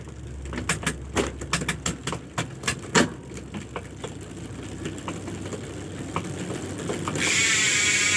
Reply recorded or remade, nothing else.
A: recorded